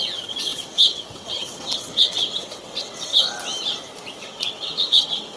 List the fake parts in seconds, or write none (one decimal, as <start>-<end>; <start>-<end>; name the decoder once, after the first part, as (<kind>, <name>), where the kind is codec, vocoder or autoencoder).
0.0-3.1 (vocoder, WaveNeXt); 4.2-5.4